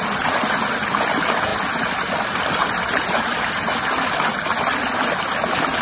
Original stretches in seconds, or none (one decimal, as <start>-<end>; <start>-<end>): 0.0-5.8